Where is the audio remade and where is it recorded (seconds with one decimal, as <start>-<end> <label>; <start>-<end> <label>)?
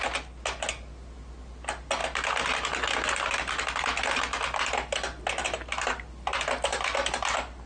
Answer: 0.0-7.7 recorded